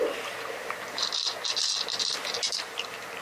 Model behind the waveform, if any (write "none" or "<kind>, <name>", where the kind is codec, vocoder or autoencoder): vocoder, BigVGAN v2